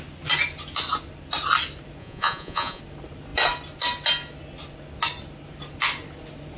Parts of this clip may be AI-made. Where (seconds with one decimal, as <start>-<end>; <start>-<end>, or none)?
2.0-2.8